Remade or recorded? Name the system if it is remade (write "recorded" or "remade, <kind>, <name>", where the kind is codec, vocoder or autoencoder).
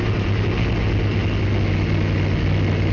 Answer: recorded